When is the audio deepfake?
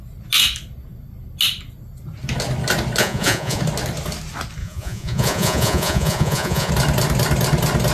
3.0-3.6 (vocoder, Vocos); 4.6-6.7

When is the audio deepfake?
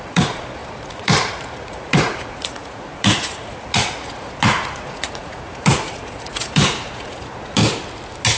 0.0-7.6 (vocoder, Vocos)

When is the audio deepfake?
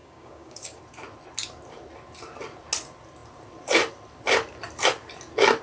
0.0-0.8 (codec, DAC)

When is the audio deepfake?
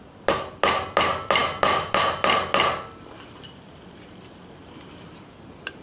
none